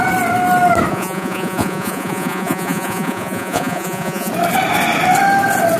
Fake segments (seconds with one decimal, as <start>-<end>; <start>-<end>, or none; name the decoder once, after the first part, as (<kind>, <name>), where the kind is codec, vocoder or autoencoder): 0.9-4.3 (vocoder, Vocos)